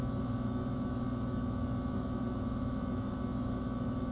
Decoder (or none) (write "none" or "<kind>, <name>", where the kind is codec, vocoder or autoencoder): autoencoder, DAC-VAE